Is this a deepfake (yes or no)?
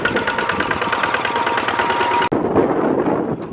no